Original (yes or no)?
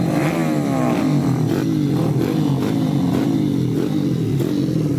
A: yes